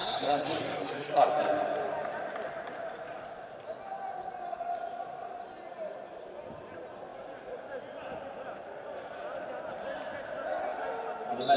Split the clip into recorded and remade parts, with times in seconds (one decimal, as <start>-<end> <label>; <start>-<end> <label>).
0.0-1.3 remade; 1.3-11.6 recorded

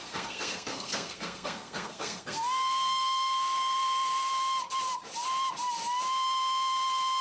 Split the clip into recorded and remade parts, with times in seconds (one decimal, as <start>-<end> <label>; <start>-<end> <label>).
0.0-4.3 remade; 4.3-7.2 recorded